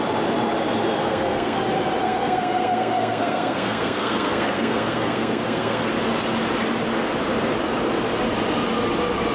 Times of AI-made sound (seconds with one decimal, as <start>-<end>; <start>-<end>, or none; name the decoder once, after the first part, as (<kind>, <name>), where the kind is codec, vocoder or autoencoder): 1.0-1.6 (codec, SNAC); 2.0-5.9